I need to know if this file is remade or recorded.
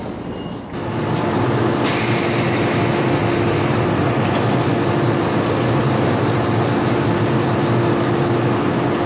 recorded